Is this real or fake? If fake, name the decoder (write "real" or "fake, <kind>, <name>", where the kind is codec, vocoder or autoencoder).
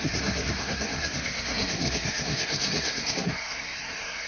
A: fake, codec, SNAC